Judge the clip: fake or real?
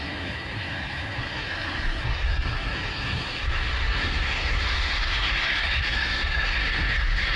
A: fake